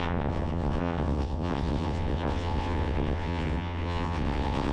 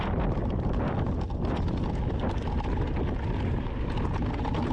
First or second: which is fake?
first